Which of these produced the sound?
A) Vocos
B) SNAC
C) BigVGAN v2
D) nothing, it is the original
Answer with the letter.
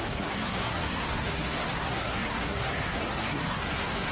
B